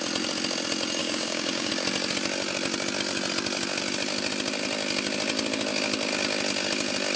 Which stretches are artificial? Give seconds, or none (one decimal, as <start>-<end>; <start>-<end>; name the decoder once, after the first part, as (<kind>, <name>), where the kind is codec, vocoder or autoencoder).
1.0-1.7 (codec, DAC)

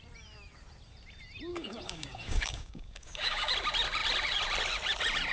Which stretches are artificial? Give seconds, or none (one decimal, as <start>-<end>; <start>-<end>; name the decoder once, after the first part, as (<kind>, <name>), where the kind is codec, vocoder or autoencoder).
1.5-3.5 (codec, DAC)

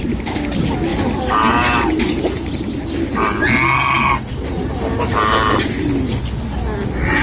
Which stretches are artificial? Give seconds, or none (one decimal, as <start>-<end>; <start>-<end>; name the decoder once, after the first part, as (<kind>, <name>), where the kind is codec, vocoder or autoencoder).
none

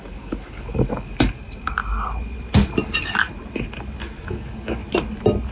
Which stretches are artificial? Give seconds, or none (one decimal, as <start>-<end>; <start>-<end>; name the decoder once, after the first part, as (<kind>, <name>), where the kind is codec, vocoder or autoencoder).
0.0-1.8 (codec, DAC); 4.2-4.8

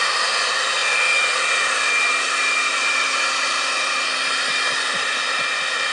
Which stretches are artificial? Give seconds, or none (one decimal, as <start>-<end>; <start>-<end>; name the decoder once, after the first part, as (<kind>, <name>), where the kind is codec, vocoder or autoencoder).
none